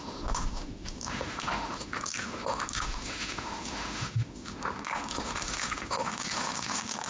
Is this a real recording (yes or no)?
no